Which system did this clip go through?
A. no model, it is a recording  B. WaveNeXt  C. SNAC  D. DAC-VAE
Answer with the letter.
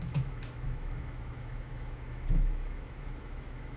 D